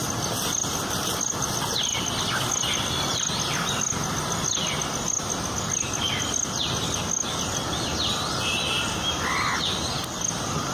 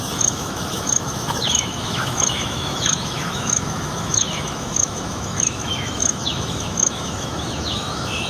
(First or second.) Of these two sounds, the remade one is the second